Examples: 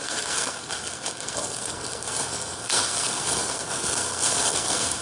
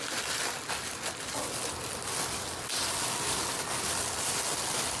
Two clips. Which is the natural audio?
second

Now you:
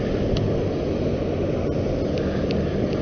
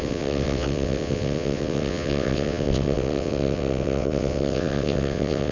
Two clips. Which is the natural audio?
first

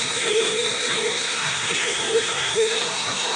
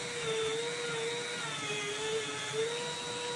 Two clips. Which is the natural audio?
second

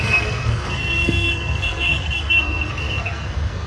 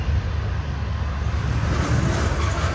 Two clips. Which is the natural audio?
second